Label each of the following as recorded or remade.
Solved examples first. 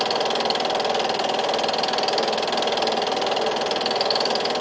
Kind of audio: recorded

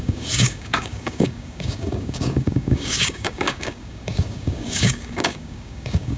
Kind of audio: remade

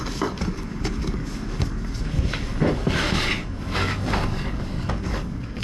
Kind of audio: remade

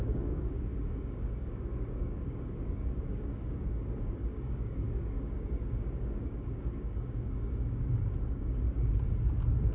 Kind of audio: remade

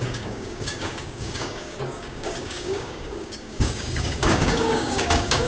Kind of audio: remade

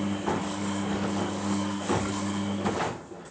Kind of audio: remade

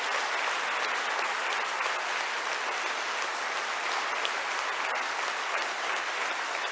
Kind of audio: recorded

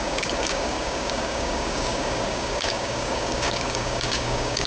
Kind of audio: remade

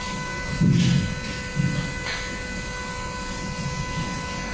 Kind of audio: recorded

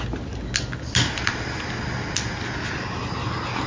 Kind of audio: recorded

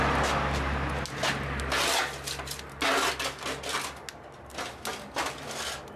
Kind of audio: recorded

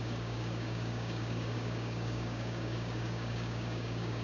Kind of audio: remade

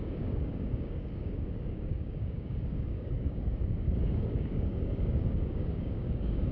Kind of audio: remade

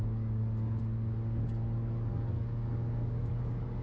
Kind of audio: remade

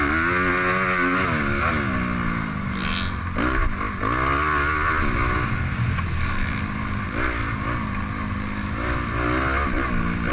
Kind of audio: recorded